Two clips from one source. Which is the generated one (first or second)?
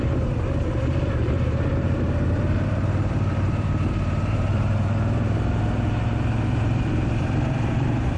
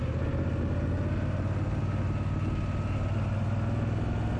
first